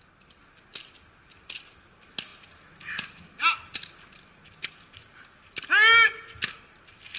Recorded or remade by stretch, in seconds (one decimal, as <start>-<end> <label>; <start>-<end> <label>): 0.0-7.2 recorded